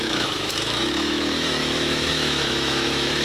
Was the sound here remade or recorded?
remade